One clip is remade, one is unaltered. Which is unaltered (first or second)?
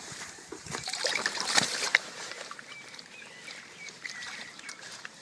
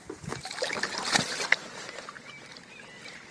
second